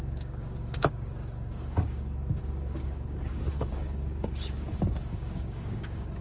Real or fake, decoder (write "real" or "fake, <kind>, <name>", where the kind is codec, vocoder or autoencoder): fake, codec, DAC